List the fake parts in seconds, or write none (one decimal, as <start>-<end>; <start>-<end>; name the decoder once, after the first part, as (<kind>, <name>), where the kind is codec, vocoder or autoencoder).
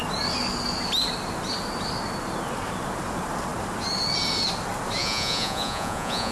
5.0-6.3 (vocoder, Vocos)